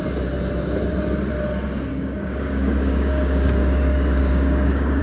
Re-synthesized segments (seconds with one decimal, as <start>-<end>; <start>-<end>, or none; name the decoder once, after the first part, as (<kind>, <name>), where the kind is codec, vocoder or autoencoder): 1.9-5.0 (codec, DAC)